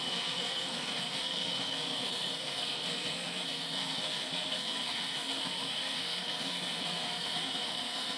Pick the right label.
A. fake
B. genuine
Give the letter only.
A